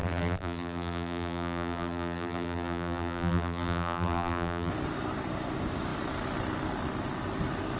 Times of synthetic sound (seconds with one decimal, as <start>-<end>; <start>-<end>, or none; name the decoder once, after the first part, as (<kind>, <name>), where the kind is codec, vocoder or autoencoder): 0.0-4.7 (vocoder, BigVGAN v2)